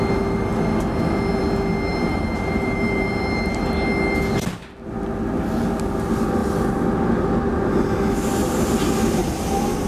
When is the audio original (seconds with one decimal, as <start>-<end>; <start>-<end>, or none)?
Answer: 0.0-1.9; 3.6-8.4; 9.0-9.9